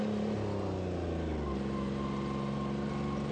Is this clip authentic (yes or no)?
yes